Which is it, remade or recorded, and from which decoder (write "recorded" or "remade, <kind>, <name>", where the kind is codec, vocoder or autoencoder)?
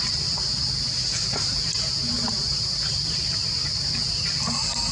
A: recorded